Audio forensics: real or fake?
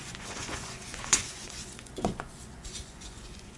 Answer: fake